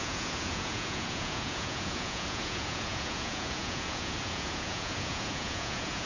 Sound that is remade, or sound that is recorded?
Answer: remade